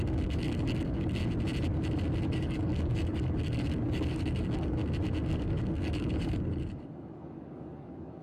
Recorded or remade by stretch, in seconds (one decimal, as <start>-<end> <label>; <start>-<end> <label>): 0.0-1.2 remade; 1.2-2.3 recorded; 2.3-4.8 remade; 4.8-5.3 recorded; 5.3-8.2 remade